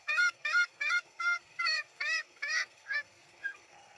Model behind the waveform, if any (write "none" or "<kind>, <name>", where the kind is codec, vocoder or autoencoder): codec, SNAC